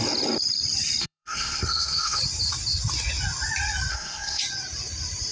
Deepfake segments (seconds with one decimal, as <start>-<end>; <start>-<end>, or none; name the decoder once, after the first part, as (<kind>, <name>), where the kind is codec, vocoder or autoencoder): 1.0-2.2 (codec, SNAC); 3.9-4.4